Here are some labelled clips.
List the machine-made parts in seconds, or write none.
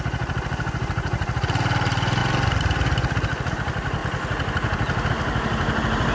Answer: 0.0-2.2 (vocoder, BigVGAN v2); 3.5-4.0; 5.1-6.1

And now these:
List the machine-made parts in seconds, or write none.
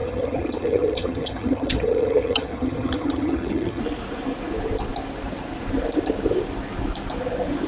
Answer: 0.0-3.8 (vocoder, HiFi-GAN)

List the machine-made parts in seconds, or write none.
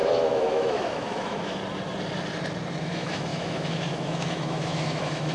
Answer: 0.0-1.6 (autoencoder, DAC-VAE); 2.8-5.3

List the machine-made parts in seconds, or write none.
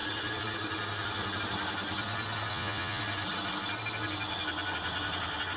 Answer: 2.5-3.0 (vocoder, Vocos)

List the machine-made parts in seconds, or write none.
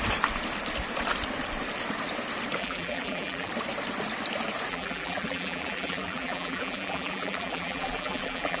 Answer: 2.6-3.5 (vocoder, BigVGAN v2); 4.7-8.6